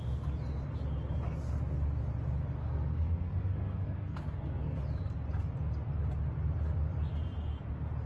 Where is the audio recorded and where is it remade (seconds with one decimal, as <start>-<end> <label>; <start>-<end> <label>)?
0.0-2.6 recorded; 2.6-4.8 remade; 4.8-8.1 recorded